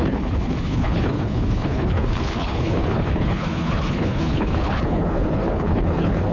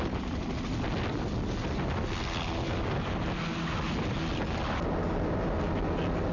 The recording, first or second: second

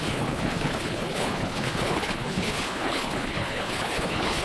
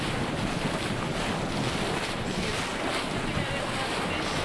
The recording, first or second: second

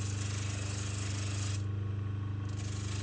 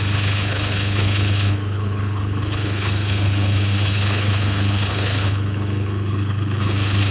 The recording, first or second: first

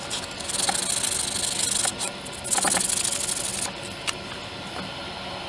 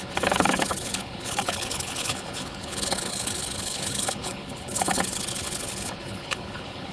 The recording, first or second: first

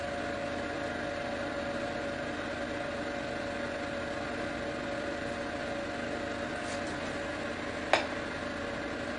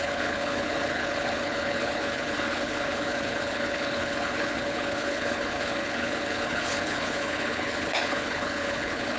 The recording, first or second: first